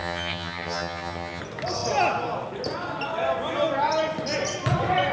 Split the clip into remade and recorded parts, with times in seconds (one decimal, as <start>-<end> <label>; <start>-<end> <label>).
0.0-1.4 remade; 1.4-5.1 recorded